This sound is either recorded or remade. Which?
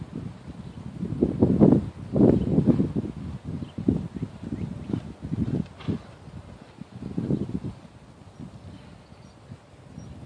recorded